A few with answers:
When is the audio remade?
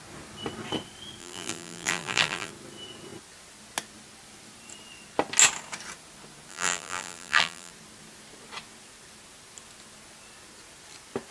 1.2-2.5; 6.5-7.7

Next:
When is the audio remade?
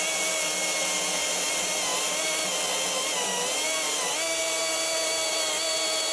none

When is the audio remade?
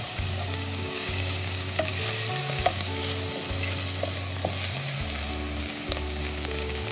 0.0-1.9; 2.4-3.0; 5.6-6.9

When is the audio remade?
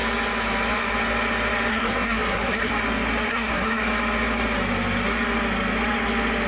1.7-2.7; 3.3-3.8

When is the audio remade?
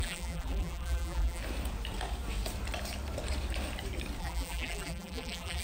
0.0-1.4; 4.2-5.6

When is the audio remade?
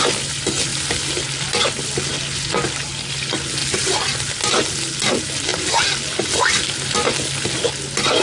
none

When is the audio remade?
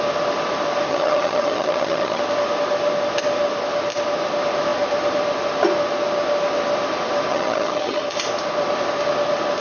0.9-2.2; 7.3-8.0